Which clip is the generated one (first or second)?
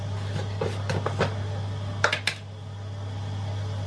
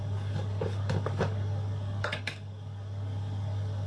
second